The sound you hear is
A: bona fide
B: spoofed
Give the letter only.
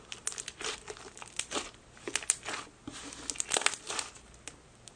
A